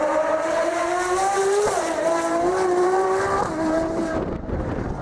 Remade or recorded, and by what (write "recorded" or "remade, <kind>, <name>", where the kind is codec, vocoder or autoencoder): remade, vocoder, BigVGAN v2